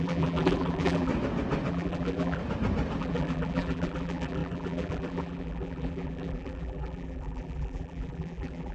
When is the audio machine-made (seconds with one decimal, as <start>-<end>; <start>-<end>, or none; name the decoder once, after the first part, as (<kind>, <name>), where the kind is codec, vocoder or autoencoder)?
0.0-1.1 (vocoder, BigVGAN v2); 1.7-2.4; 3.0-8.7